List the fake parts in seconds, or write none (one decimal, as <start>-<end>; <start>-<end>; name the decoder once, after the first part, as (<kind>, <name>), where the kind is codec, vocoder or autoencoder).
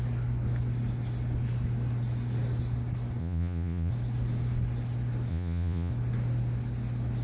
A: 3.2-3.9 (vocoder, Vocos); 5.3-5.9